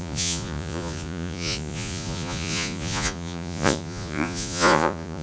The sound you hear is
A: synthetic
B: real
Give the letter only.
A